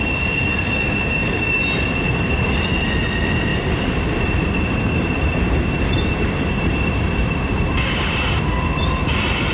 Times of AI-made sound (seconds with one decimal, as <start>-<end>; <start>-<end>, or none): 1.2-2.5; 3.5-8.5